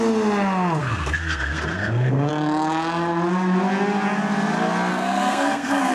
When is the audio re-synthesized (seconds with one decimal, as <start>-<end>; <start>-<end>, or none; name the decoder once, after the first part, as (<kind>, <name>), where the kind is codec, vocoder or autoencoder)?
0.8-2.3 (codec, SNAC); 4.9-5.9